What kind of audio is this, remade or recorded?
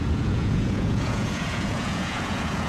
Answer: remade